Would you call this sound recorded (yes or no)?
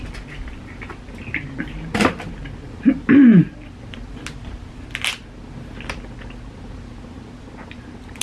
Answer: yes